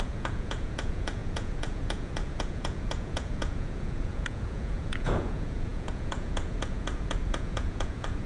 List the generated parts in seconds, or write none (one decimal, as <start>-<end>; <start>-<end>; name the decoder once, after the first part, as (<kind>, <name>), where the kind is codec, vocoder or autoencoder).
0.0-8.3 (vocoder, Vocos)